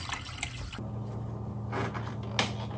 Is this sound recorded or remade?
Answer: recorded